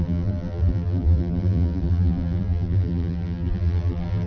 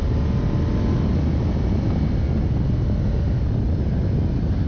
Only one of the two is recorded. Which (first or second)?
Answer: second